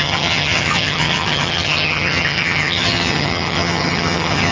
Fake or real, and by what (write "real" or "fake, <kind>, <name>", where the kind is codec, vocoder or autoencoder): fake, vocoder, HiFi-GAN